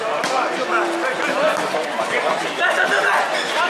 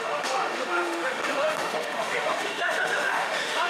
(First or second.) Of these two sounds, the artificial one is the second